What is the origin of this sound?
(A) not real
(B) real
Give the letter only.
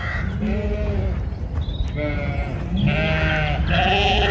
B